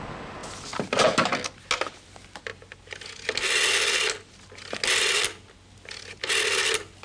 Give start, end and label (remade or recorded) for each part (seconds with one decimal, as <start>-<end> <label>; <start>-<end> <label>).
0.0-7.0 recorded